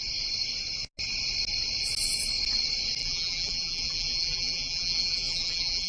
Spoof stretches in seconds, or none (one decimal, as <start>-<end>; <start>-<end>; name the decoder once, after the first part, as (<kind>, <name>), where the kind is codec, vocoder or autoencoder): 3.0-5.9 (vocoder, BigVGAN v2)